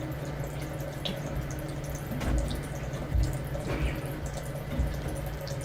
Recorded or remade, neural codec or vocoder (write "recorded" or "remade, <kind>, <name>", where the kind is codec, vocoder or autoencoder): recorded